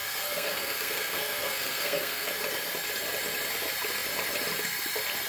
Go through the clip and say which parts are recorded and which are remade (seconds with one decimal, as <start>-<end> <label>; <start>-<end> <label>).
0.0-2.3 remade; 2.3-5.3 recorded